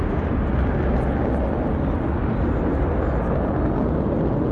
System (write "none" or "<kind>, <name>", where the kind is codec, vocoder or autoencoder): none